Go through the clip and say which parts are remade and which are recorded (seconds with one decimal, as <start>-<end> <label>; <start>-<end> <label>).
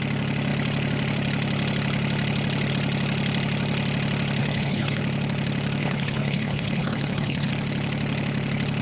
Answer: 0.0-4.4 recorded; 4.4-5.0 remade; 5.0-5.8 recorded; 5.8-7.5 remade; 7.5-8.8 recorded